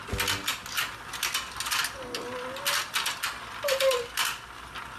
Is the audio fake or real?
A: real